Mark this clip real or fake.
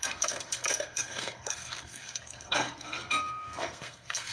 fake